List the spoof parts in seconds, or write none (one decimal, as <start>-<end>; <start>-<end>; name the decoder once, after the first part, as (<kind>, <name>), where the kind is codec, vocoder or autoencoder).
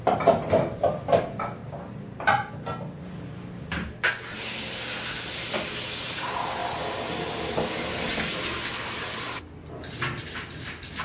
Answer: none